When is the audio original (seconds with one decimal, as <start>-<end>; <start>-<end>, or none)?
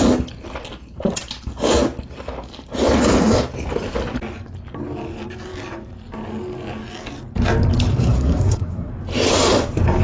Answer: 0.0-7.9; 8.9-10.0